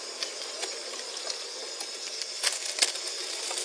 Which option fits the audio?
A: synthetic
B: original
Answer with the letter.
B